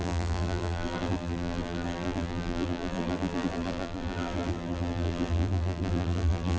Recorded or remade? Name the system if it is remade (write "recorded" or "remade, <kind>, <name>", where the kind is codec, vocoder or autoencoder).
remade, vocoder, BigVGAN v2